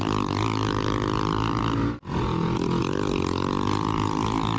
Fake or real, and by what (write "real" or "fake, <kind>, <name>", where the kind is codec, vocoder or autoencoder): real